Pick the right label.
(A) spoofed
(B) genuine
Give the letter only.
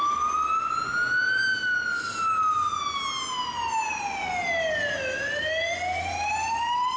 B